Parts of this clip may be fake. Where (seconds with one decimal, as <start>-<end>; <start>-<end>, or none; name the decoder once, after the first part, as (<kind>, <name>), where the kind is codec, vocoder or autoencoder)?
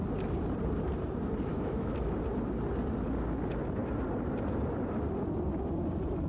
1.5-2.1 (autoencoder, DAC-VAE)